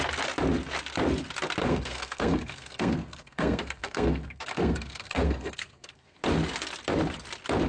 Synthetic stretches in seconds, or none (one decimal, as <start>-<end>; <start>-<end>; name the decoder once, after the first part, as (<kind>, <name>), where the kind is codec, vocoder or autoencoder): 1.6-6.2 (codec, SNAC)